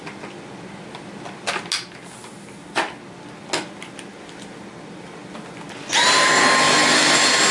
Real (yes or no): yes